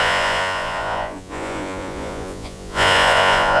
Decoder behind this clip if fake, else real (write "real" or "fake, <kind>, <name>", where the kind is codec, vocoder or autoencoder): fake, vocoder, Vocos